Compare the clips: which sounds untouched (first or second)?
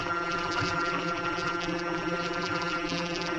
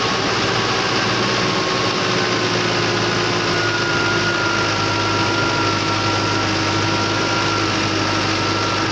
second